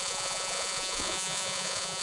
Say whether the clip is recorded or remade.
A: remade